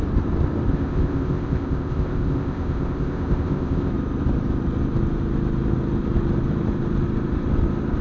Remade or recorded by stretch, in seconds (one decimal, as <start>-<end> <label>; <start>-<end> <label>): 0.0-0.7 recorded; 0.7-3.9 remade; 3.9-8.0 recorded

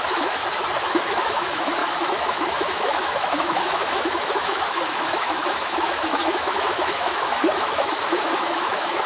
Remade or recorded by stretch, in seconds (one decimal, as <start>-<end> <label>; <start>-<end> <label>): 0.0-0.4 remade; 0.4-1.0 recorded; 1.0-9.1 remade

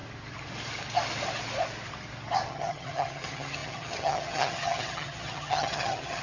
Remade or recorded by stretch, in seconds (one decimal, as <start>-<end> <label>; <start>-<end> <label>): 0.0-2.5 recorded; 2.5-6.2 remade

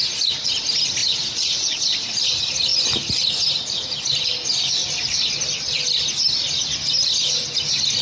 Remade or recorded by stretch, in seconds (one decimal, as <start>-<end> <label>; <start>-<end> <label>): 0.0-1.0 recorded; 1.0-2.1 remade; 2.1-8.0 recorded

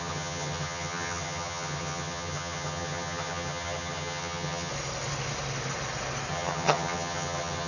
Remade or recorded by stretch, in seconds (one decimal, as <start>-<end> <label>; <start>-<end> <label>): 0.0-4.7 remade; 4.7-6.3 recorded; 6.3-7.7 remade